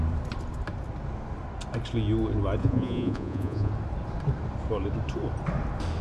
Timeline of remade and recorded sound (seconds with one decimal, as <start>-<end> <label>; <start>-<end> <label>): 0.0-2.6 recorded; 2.6-3.7 remade; 3.7-6.0 recorded